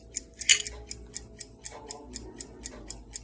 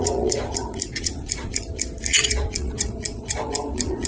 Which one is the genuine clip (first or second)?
first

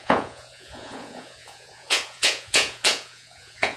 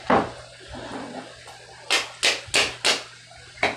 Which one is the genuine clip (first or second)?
second